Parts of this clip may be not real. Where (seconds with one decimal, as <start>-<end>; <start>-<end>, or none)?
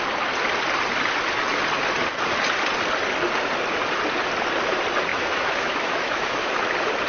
5.1-6.6